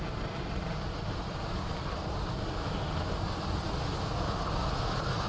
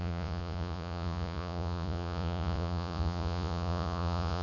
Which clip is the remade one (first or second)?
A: second